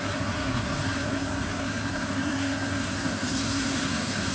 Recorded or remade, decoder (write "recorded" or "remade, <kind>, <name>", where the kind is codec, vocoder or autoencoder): remade, codec, SNAC